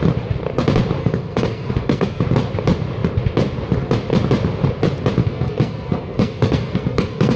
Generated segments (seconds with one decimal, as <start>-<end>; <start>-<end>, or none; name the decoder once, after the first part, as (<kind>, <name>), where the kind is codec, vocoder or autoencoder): 1.0-2.2 (codec, SNAC); 5.2-7.4